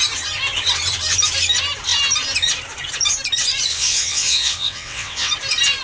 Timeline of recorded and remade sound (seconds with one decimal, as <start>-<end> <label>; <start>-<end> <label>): 0.0-3.7 recorded; 3.7-5.3 remade; 5.3-5.8 recorded